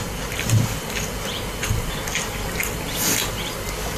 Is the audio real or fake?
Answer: real